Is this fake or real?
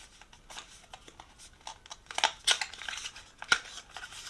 real